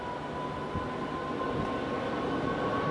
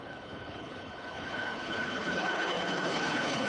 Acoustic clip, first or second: first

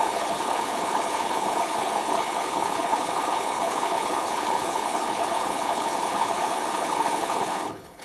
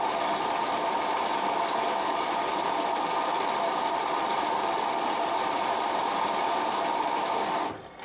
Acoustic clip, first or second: second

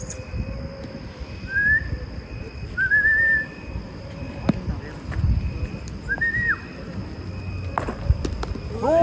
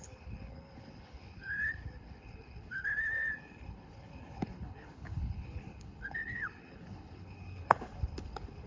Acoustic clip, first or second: first